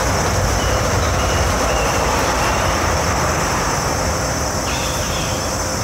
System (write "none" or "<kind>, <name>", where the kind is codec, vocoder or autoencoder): none